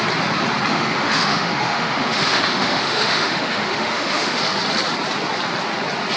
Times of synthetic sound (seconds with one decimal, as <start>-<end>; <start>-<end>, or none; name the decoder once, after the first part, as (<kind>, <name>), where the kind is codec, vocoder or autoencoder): 0.7-4.4 (autoencoder, DAC-VAE)